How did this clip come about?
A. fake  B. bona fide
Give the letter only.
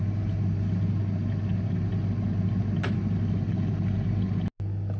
B